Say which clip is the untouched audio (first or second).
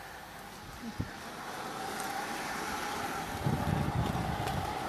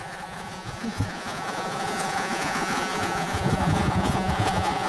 first